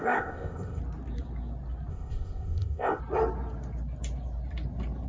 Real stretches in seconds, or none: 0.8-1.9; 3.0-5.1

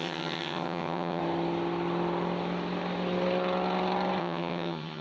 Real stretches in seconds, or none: 1.2-4.2

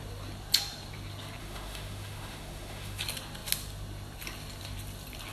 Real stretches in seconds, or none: 0.0-1.4; 3.0-5.3